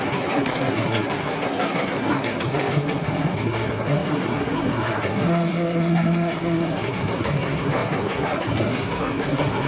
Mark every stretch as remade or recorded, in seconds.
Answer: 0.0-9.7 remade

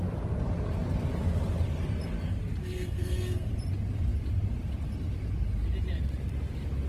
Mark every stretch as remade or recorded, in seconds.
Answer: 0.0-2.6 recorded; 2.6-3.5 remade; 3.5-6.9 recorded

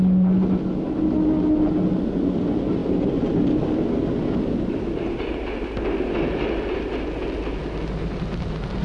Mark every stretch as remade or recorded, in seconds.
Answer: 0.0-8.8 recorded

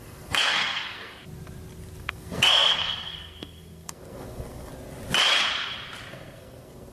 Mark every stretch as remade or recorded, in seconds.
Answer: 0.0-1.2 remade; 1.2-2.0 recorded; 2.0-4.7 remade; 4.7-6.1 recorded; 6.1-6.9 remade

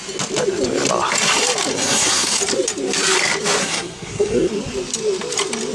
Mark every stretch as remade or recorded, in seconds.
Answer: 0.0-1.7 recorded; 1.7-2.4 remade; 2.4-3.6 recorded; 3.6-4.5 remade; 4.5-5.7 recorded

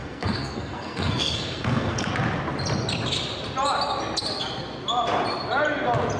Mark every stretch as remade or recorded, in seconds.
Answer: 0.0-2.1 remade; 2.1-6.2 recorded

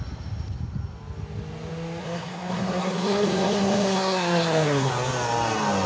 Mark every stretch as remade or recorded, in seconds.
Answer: 0.0-2.0 recorded; 2.0-4.9 remade; 4.9-5.9 recorded

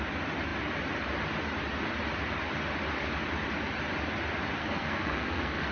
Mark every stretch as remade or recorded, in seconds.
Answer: 0.0-4.6 recorded; 4.6-5.7 remade